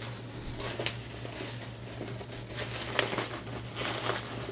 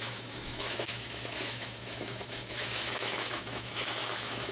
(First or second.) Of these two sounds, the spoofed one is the second